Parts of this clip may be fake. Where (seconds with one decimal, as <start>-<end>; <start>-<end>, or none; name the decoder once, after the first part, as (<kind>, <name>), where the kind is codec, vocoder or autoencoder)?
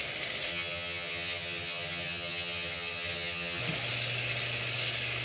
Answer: 0.5-3.6 (vocoder, HiFi-GAN)